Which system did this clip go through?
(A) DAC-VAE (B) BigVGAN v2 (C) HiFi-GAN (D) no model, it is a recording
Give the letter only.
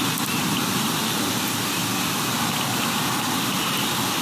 D